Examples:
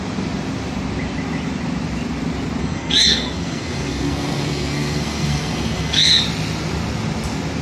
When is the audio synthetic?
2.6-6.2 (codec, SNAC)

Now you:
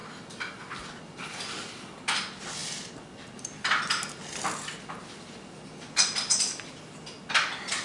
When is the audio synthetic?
none

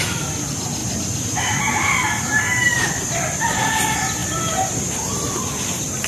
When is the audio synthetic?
none

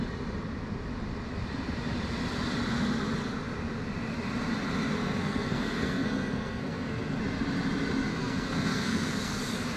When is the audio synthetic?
5.0-7.2 (codec, SNAC); 8.1-9.4